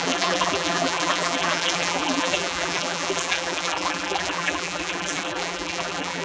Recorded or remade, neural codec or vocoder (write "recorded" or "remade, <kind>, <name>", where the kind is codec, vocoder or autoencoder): remade, vocoder, BigVGAN v2